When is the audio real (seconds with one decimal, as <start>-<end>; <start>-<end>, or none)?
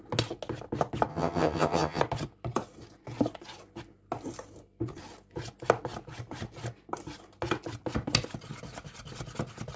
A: 0.0-1.1; 2.0-9.8